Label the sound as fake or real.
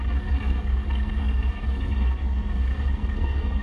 fake